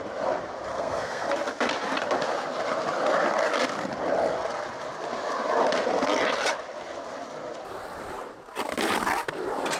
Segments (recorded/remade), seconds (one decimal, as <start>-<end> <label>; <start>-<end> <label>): 0.0-0.7 recorded; 0.7-1.3 remade; 1.3-9.8 recorded